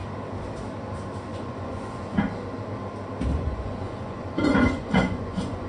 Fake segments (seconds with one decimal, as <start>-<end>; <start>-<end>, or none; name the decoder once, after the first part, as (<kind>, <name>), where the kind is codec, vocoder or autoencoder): 1.3-2.2 (vocoder, Vocos); 3.3-5.7